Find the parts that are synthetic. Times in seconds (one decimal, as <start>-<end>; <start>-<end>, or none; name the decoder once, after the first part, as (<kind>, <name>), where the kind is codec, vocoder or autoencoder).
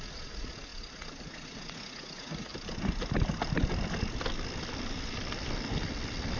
0.0-2.5 (vocoder, Vocos)